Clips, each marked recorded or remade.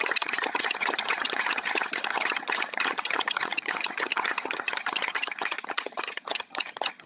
remade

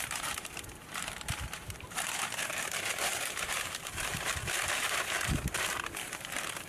remade